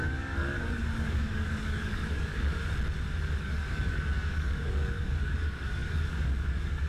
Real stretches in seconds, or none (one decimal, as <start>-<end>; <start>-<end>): 2.6-3.4